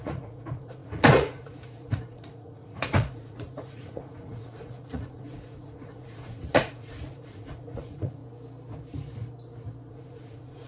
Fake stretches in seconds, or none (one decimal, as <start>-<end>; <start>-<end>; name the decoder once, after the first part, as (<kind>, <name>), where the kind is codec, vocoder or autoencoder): 0.0-8.2 (vocoder, Vocos); 9.9-10.7